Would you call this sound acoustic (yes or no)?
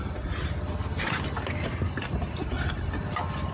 yes